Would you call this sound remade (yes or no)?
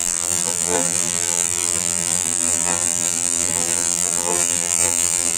yes